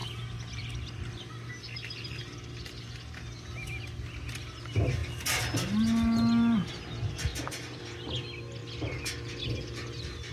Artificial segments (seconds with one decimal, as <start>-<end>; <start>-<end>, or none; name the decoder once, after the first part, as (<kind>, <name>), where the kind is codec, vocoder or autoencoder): 7.3-7.8 (vocoder, BigVGAN v2)